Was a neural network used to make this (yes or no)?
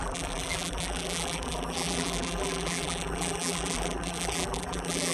yes